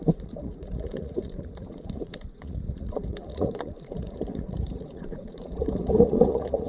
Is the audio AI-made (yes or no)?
yes